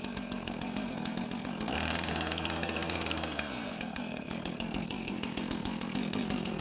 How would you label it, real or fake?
fake